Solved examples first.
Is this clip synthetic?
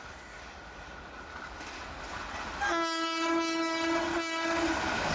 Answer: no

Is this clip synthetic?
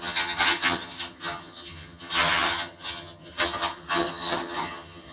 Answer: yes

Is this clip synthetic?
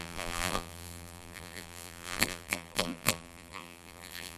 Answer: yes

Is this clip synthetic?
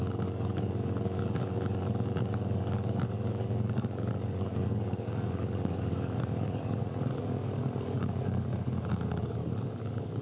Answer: yes